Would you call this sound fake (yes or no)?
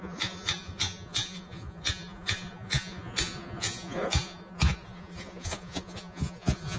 yes